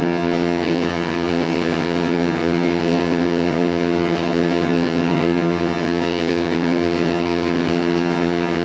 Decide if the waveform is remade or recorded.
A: remade